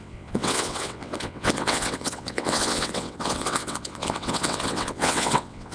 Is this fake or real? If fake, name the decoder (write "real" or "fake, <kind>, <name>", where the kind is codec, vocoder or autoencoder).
fake, vocoder, WaveNeXt